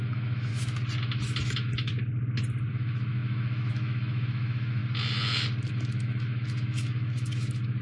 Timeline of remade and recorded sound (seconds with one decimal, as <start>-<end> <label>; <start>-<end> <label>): 0.0-0.5 remade; 0.5-1.4 recorded; 1.4-1.9 remade; 1.9-2.7 recorded; 2.7-4.8 remade; 4.8-5.7 recorded; 5.7-7.8 remade